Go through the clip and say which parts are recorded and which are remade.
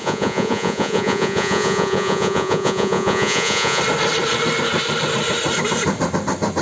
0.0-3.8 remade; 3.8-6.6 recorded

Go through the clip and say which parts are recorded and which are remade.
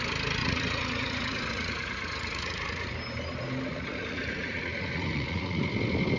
0.0-0.4 recorded; 0.4-2.9 remade; 2.9-3.7 recorded; 3.7-5.6 remade; 5.6-6.2 recorded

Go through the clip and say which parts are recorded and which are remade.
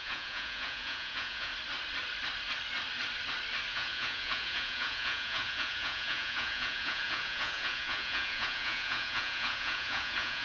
0.0-1.5 remade; 1.5-3.7 recorded; 3.7-10.4 remade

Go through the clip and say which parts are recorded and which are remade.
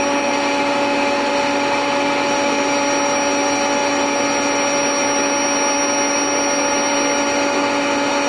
0.0-8.3 recorded